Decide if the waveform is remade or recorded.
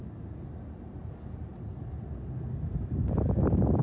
recorded